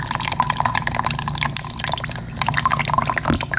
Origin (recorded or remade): recorded